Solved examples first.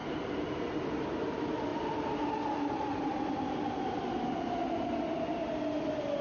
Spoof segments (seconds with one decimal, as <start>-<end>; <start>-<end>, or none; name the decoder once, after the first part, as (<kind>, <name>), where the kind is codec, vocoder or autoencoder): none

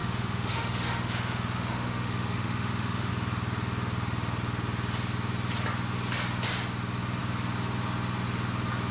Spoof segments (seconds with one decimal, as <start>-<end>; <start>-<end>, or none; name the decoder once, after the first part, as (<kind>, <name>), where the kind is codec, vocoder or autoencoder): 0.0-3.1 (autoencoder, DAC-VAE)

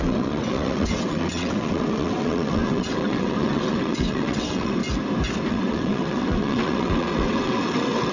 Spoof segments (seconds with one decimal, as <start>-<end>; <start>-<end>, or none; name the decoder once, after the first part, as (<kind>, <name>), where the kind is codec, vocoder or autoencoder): 0.0-4.8 (vocoder, WaveNeXt); 5.5-8.1

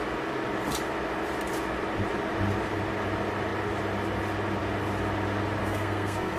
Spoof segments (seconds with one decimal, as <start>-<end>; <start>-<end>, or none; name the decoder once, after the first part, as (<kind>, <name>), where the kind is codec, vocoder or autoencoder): 5.6-6.4 (codec, SNAC)

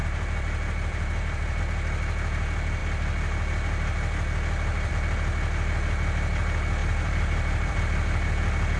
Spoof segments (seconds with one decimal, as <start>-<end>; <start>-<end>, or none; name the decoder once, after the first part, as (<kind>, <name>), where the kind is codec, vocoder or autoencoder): 0.0-1.6 (vocoder, BigVGAN v2); 6.8-7.8

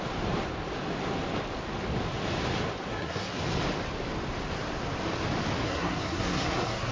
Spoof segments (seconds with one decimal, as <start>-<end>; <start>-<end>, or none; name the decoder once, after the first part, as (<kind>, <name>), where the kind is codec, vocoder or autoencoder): 2.9-3.4 (codec, SNAC); 5.6-6.9

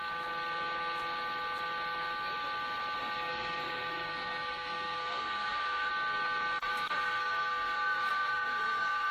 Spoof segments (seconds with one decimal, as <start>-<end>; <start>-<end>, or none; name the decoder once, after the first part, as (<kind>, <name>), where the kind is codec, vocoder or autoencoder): 3.0-5.9 (codec, SNAC); 6.6-9.1

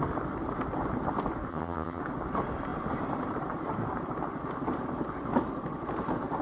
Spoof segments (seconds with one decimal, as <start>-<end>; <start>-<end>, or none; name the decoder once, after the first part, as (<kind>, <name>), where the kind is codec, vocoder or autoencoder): 1.5-2.0 (vocoder, HiFi-GAN)